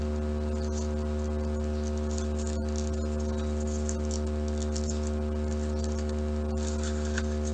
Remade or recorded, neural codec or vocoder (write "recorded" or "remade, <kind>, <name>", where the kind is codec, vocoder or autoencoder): recorded